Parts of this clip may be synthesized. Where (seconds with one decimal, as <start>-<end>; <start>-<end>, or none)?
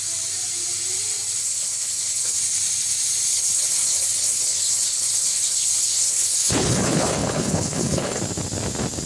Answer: 1.4-2.4; 3.3-8.2